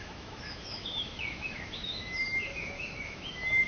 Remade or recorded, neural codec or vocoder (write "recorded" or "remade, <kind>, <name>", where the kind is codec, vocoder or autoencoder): remade, autoencoder, DAC-VAE